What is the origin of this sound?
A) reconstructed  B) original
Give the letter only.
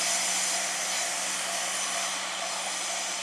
B